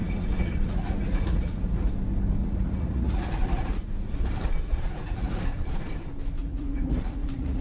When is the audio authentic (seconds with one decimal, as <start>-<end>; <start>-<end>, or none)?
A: 1.9-2.4; 5.6-6.4